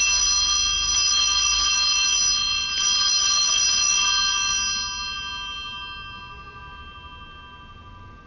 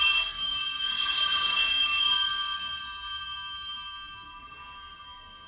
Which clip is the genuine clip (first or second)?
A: first